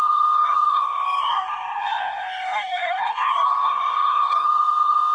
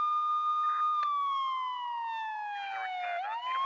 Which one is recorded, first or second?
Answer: second